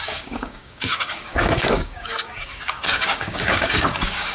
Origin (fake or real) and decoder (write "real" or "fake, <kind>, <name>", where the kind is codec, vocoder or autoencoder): fake, codec, DAC